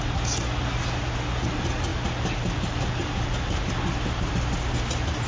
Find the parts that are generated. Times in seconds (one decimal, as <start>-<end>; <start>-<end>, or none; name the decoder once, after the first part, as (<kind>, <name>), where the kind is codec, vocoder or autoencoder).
none